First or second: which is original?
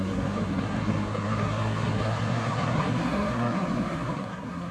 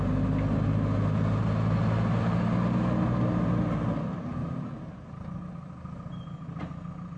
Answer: second